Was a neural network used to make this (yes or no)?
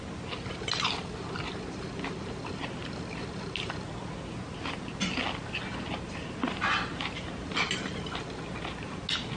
no